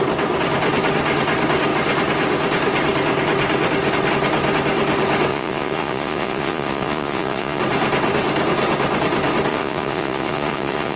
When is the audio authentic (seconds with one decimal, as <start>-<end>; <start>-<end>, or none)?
0.0-5.3; 7.6-9.5